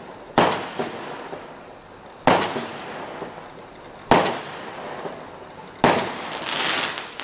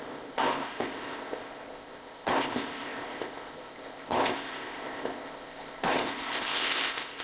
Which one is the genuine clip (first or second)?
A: first